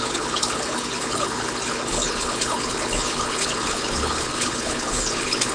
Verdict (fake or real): fake